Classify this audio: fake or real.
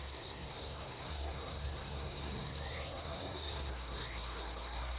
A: fake